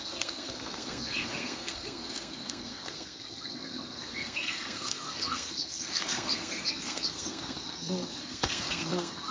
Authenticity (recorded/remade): remade